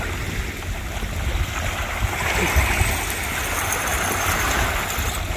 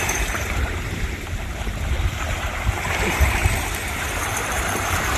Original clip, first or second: first